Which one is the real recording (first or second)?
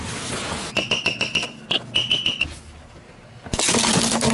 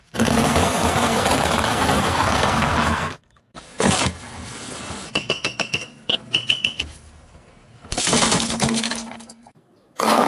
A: first